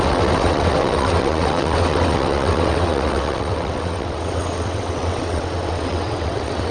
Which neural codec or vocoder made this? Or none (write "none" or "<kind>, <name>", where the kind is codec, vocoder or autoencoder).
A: vocoder, WaveNeXt